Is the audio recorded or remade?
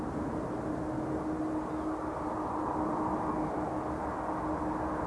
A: recorded